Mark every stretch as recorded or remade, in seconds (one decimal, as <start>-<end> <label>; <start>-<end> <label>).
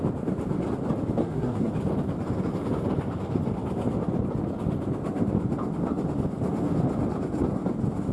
0.0-1.2 recorded; 1.2-1.7 remade; 1.7-8.1 recorded